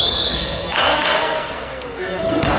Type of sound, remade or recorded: remade